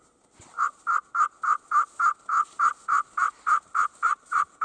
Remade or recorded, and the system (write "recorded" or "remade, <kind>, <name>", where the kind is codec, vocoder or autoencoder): recorded